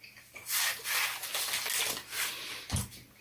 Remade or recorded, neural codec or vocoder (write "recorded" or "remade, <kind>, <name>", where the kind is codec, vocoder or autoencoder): recorded